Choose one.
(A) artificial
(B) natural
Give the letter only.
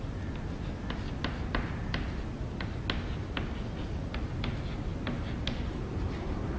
B